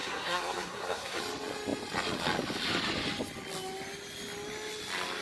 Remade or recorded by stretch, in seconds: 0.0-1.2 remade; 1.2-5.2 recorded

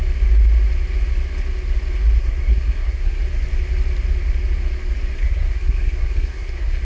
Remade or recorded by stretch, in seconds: 0.0-2.2 recorded; 2.2-3.2 remade; 3.2-5.2 recorded; 5.2-6.8 remade

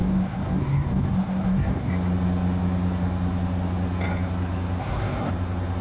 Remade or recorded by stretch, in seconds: 0.0-1.9 remade; 1.9-4.8 recorded; 4.8-5.3 remade; 5.3-5.8 recorded